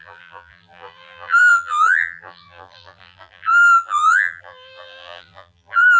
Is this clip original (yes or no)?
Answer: no